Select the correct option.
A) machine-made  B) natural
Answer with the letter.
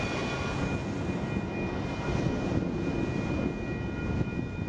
B